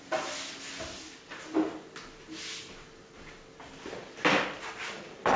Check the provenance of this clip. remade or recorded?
recorded